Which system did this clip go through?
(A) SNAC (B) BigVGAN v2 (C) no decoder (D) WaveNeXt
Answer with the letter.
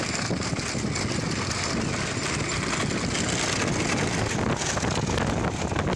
C